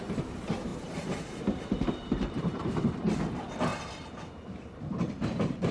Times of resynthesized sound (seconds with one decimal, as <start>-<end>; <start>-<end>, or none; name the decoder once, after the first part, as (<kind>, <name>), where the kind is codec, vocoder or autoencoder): 0.0-5.7 (vocoder, BigVGAN v2)